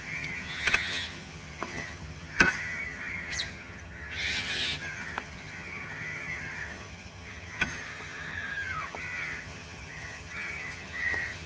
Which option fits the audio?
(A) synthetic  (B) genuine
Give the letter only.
A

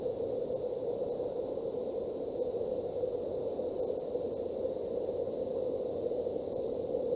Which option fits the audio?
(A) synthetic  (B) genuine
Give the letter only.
B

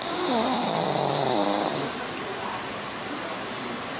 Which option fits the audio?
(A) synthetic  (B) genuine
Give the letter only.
B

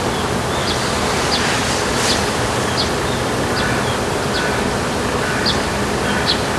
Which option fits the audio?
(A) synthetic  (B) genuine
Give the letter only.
B